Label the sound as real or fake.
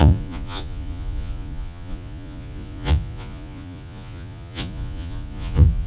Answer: fake